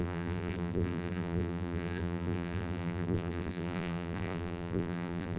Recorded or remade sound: remade